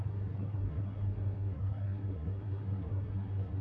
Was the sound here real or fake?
fake